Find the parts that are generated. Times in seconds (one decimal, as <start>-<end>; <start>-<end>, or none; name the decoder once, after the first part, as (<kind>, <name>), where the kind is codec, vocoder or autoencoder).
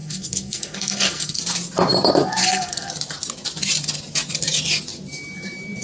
0.0-1.4 (codec, SNAC); 2.4-2.9